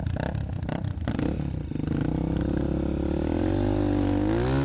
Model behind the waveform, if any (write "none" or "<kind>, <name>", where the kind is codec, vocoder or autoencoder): none